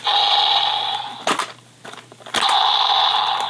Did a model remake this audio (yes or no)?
no